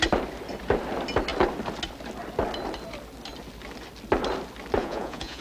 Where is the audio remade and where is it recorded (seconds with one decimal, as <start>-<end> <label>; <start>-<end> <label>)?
0.0-4.8 recorded; 4.8-5.4 remade